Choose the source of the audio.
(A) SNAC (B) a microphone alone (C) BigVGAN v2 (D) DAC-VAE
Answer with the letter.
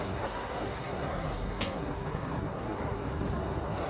A